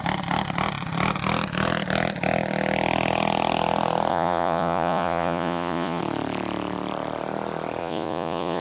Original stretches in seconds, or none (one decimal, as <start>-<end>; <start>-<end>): 0.0-4.1; 6.0-7.8